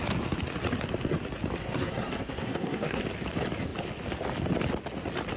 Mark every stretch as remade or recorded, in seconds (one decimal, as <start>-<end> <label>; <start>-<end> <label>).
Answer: 0.0-1.6 recorded; 1.6-3.0 remade; 3.0-5.4 recorded